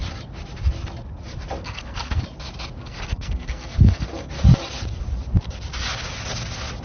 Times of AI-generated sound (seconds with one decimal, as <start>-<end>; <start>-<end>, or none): 1.6-2.2; 2.8-4.3